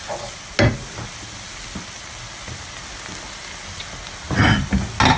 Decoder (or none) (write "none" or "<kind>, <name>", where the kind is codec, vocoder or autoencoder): none